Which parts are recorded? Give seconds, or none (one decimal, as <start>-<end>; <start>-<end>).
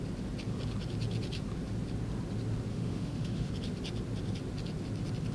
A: 0.0-2.7; 3.5-5.3